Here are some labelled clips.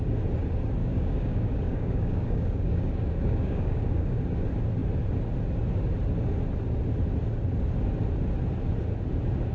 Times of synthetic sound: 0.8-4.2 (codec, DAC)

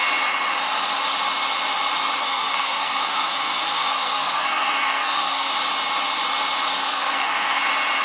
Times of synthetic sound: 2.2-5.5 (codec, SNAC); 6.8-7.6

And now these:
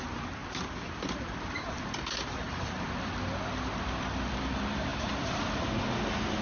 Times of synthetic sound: 0.4-3.2 (vocoder, BigVGAN v2); 4.9-5.6

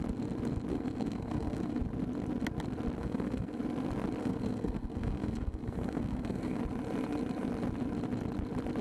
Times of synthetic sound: 0.7-1.8 (codec, SNAC); 3.0-3.6; 4.2-6.6

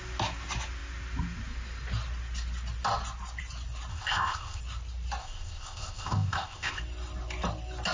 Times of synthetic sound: 3.9-4.6 (codec, ZipCodec); 5.2-6.8

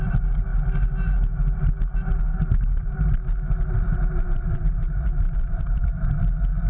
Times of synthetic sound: 2.4-6.1 (vocoder, BigVGAN v2)

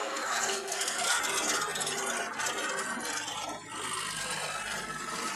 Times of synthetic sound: 0.0-1.2 (codec, SNAC)